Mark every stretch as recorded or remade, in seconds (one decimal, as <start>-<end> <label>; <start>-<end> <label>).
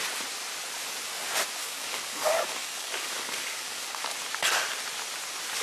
0.0-1.6 recorded; 1.6-4.0 remade; 4.0-5.6 recorded